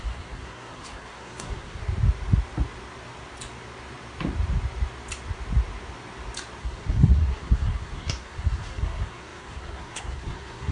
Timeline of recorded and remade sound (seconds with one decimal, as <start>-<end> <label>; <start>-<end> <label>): 0.0-1.8 remade; 1.8-6.6 recorded; 6.6-10.7 remade

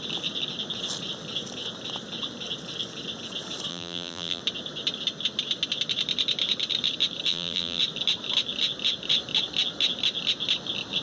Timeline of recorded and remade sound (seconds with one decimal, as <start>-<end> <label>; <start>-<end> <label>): 0.0-3.7 recorded; 3.7-4.4 remade; 4.4-7.3 recorded; 7.3-7.8 remade; 7.8-11.0 recorded

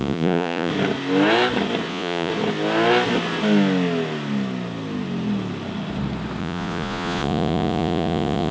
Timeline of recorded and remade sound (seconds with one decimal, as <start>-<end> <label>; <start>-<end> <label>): 0.0-0.7 remade; 0.7-1.9 recorded; 1.9-2.3 remade; 2.3-6.4 recorded; 6.4-8.5 remade

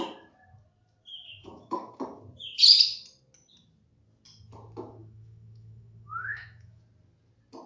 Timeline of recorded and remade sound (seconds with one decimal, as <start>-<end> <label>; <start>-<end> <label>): 0.0-1.1 recorded; 1.1-1.9 remade; 1.9-5.0 recorded; 5.0-6.8 remade; 6.8-7.7 recorded